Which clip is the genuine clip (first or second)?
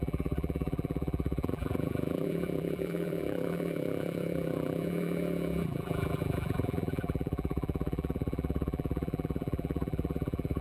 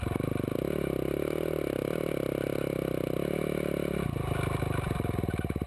second